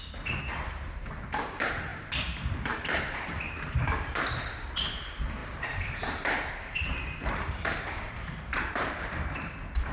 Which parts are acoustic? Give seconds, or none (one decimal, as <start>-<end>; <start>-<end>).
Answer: none